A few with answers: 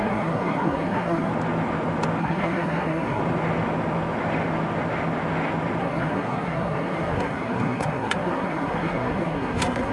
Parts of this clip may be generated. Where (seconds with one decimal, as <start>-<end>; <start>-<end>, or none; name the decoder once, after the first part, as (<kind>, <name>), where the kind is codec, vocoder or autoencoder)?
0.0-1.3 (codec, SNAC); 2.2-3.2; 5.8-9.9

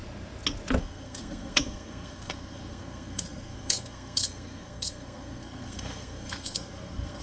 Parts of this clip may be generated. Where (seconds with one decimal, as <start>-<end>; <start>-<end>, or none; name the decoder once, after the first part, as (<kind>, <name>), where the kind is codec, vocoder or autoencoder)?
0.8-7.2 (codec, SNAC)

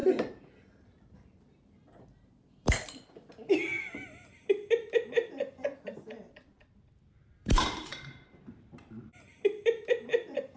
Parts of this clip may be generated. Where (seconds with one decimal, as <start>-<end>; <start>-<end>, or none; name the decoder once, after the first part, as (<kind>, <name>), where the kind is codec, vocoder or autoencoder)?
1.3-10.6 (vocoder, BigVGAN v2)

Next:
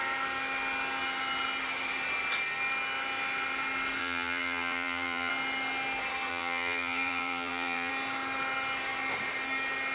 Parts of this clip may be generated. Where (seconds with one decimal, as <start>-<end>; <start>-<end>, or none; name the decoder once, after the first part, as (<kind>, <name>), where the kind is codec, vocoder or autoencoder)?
4.0-5.3 (vocoder, BigVGAN v2); 6.3-7.9

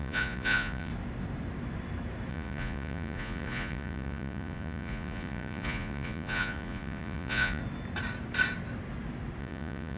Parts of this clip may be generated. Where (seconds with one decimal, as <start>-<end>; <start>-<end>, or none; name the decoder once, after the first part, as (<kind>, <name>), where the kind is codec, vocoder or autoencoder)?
0.0-0.9 (vocoder, Vocos); 2.3-7.6; 9.4-10.0

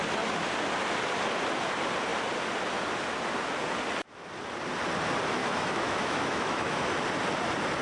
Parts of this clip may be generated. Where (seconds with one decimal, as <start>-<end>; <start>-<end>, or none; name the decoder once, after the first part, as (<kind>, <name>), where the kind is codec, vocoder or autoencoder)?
5.4-6.9 (autoencoder, DAC-VAE)

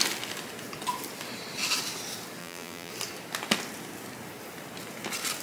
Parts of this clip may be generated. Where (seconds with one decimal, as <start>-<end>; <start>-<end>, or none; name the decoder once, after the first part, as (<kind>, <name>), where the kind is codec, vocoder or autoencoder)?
2.4-2.9 (vocoder, BigVGAN v2)